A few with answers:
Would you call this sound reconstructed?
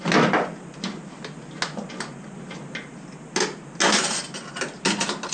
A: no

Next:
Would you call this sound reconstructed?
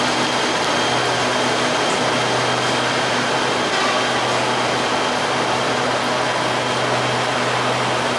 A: no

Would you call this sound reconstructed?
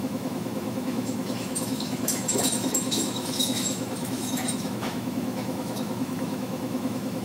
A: yes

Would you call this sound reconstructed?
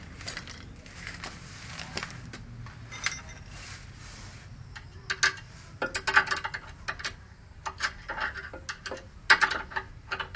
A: no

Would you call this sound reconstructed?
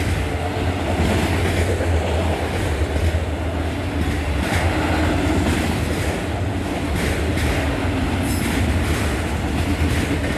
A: no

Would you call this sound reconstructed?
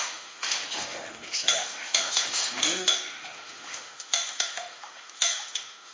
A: yes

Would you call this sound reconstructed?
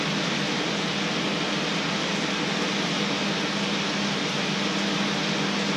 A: no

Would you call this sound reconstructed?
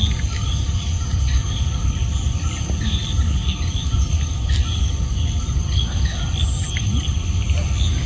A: no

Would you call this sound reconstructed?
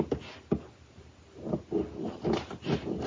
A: no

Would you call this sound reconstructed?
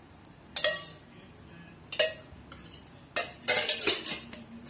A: no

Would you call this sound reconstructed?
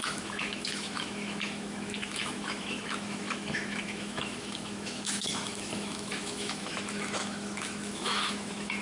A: yes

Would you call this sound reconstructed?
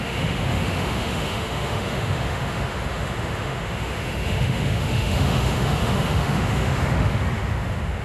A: yes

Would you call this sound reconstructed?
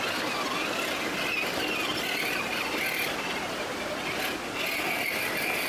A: no